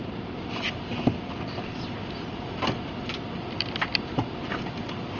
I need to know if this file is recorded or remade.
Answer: recorded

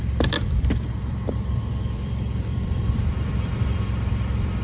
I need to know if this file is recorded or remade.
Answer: remade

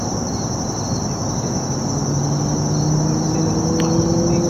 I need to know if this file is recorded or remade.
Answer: recorded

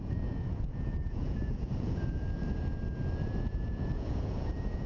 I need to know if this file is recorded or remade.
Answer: remade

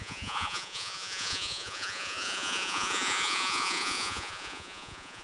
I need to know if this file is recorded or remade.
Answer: remade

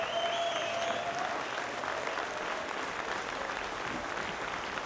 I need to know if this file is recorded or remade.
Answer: recorded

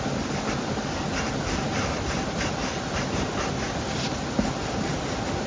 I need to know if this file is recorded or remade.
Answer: recorded